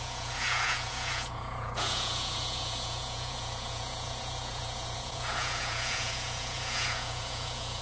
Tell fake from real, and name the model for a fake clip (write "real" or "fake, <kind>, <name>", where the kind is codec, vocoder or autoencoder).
fake, vocoder, Vocos